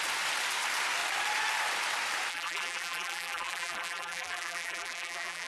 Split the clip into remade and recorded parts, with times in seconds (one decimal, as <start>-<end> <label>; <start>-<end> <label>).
0.0-2.3 recorded; 2.3-5.5 remade